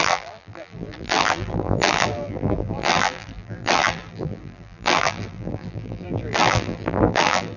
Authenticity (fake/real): fake